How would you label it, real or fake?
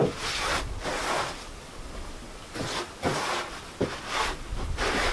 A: real